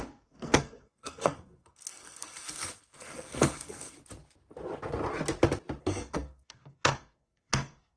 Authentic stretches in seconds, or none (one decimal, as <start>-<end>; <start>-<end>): 4.0-5.8